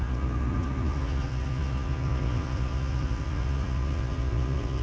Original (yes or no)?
no